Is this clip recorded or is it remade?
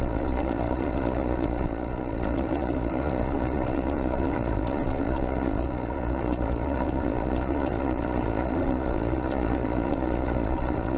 remade